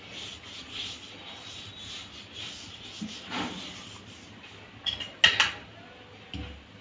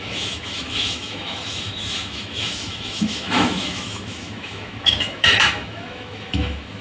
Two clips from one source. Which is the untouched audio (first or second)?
first